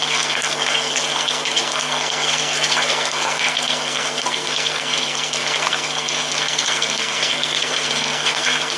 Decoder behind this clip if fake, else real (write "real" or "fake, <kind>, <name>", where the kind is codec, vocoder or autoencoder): fake, codec, SNAC